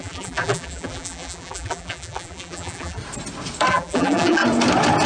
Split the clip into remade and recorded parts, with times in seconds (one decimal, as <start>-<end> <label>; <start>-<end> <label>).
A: 0.0-3.0 remade; 3.0-3.7 recorded; 3.7-4.4 remade; 4.4-5.1 recorded

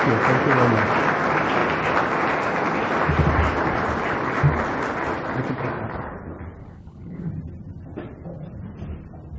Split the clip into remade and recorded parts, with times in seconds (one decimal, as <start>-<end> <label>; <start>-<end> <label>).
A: 0.0-6.6 recorded; 6.6-7.3 remade; 7.3-9.4 recorded

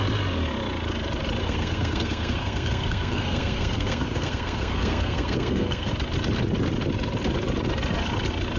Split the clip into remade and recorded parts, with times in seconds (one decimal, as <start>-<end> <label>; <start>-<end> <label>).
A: 0.0-1.4 recorded; 1.4-5.9 remade; 5.9-8.6 recorded

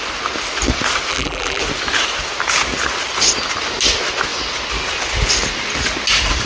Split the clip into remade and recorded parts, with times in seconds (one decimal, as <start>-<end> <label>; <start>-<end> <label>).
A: 0.0-1.1 recorded; 1.1-1.6 remade; 1.6-6.5 recorded

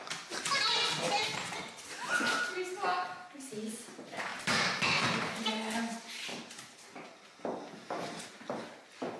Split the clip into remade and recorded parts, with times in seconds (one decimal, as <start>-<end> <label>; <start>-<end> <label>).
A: 0.0-4.3 recorded; 4.3-5.5 remade; 5.5-9.2 recorded

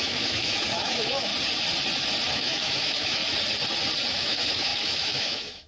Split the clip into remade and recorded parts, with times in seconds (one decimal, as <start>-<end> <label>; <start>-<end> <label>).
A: 0.0-1.3 remade; 1.3-2.3 recorded; 2.3-3.2 remade; 3.2-4.1 recorded; 4.1-5.7 remade

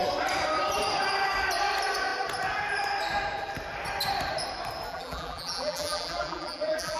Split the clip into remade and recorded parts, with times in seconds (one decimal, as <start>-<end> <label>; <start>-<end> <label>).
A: 0.0-4.9 recorded; 4.9-7.0 remade